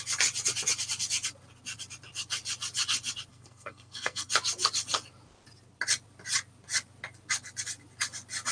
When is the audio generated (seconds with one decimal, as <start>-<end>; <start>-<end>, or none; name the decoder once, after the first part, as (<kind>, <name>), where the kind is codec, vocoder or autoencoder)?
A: 3.3-4.3 (codec, SNAC)